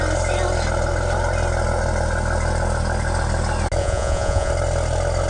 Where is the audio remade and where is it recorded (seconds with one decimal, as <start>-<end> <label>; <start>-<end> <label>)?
0.0-3.8 recorded; 3.8-4.5 remade; 4.5-5.3 recorded